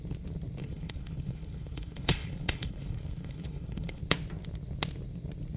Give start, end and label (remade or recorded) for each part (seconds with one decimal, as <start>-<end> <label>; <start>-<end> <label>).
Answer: 0.0-0.6 recorded; 0.6-4.0 remade; 4.0-5.6 recorded